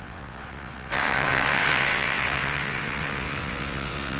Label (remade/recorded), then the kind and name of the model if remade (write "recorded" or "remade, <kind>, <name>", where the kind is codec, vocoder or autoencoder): remade, vocoder, WaveNeXt